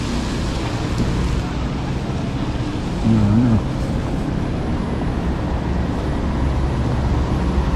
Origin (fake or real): real